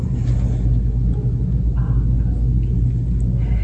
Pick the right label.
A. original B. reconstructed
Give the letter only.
A